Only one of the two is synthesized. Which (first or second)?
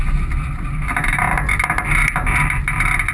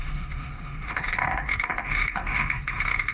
second